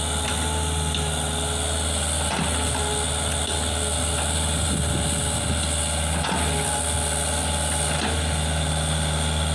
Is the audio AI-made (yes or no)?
no